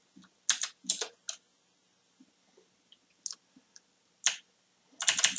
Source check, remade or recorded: recorded